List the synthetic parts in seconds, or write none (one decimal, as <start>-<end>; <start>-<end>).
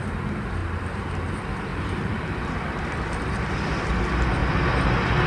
0.6-1.2; 1.7-4.0